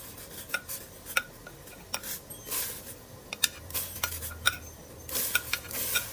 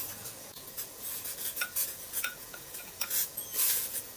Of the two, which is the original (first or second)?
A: first